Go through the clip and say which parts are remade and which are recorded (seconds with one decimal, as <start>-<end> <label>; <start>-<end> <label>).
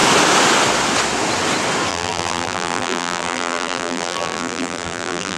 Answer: 0.0-1.9 recorded; 1.9-5.4 remade